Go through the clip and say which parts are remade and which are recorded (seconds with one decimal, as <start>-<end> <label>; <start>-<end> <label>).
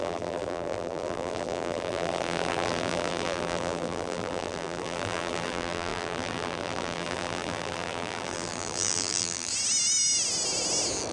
0.0-9.5 remade; 9.5-11.1 recorded